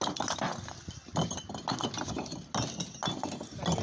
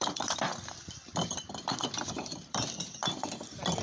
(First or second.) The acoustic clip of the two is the first